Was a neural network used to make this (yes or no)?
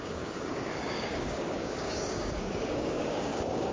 yes